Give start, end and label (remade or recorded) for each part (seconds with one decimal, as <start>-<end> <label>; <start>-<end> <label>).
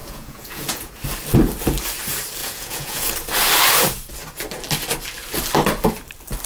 0.0-0.9 remade; 0.9-2.4 recorded; 2.4-3.1 remade; 3.1-6.5 recorded